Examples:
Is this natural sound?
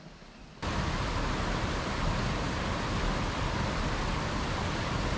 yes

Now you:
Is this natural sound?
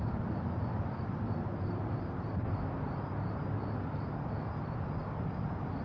yes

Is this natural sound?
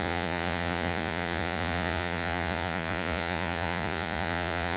no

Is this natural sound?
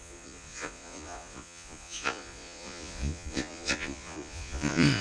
no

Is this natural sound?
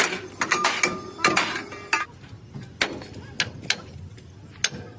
yes